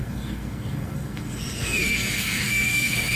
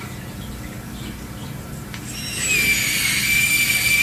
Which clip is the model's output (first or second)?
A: first